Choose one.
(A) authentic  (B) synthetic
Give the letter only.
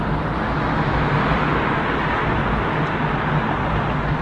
A